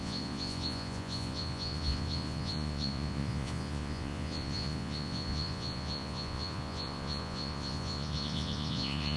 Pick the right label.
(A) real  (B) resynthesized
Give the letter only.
B